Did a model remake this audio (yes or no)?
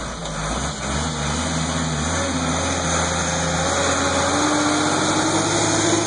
no